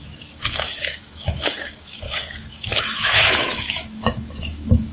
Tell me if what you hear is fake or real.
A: fake